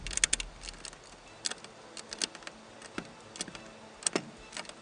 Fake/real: real